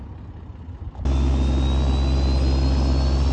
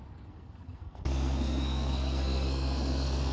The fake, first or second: second